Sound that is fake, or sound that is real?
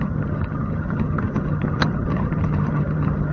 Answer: fake